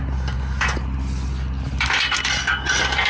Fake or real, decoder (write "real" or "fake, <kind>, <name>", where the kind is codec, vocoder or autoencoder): real